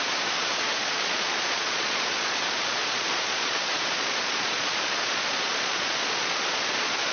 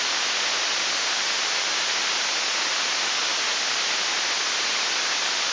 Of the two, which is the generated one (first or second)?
first